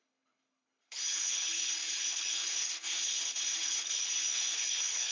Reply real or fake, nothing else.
fake